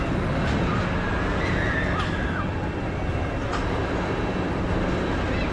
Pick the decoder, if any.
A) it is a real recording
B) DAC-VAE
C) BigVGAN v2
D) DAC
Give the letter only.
A